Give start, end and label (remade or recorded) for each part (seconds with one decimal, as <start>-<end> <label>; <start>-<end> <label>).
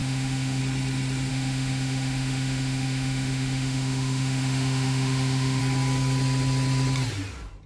0.0-0.6 remade; 0.6-1.3 recorded; 1.3-5.6 remade; 5.6-7.7 recorded